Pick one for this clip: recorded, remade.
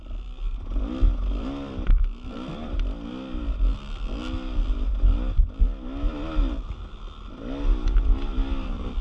recorded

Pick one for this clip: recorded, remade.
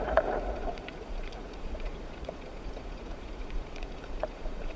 remade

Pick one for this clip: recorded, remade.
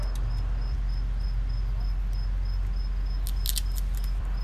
recorded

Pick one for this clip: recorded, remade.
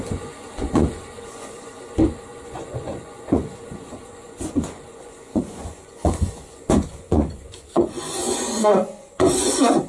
remade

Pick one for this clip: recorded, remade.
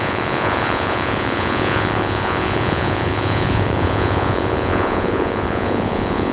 remade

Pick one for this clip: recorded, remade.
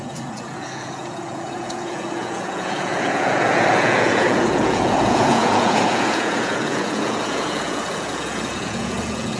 remade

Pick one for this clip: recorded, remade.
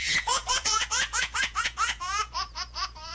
remade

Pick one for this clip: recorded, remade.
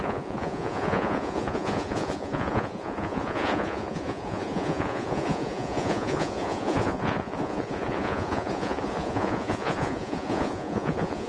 remade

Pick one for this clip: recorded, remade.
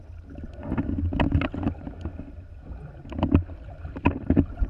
recorded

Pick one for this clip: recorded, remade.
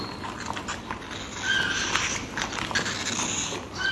recorded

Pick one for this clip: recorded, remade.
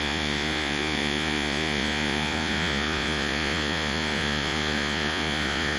remade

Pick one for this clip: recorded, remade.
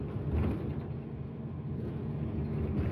recorded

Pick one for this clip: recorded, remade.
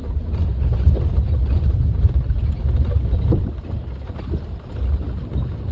recorded